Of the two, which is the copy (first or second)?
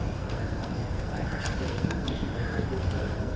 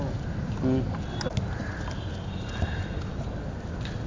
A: first